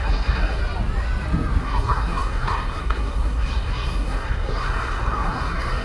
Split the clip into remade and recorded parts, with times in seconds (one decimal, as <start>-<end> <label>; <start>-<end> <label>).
0.0-0.6 remade; 0.6-1.6 recorded; 1.6-5.8 remade